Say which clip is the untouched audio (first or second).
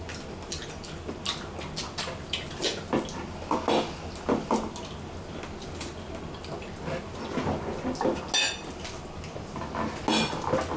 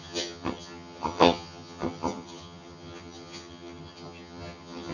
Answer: first